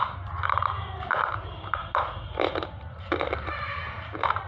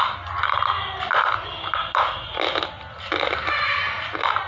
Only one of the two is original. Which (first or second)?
second